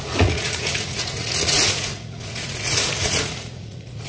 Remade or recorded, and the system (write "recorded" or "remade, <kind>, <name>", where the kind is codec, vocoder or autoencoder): remade, vocoder, Vocos